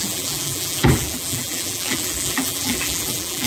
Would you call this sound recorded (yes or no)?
no